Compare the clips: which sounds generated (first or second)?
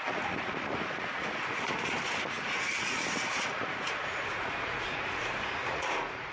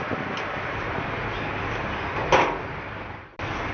first